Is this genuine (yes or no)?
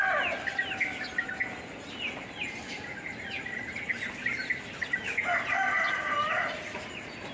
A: yes